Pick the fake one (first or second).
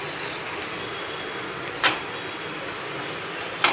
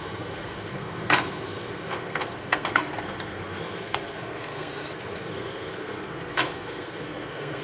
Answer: second